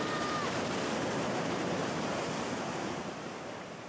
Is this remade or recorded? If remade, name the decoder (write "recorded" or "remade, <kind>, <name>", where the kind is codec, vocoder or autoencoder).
remade, vocoder, BigVGAN v2